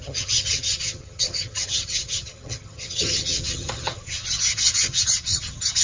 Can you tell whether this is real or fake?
fake